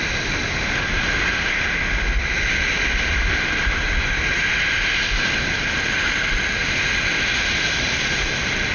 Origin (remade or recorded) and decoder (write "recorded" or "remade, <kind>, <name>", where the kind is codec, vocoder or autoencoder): recorded